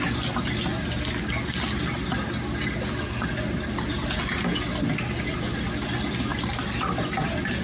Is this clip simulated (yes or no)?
no